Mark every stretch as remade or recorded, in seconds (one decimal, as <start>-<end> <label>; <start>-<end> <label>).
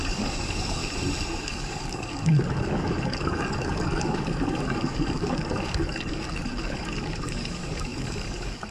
0.0-0.8 remade; 0.8-1.4 recorded; 1.4-8.7 remade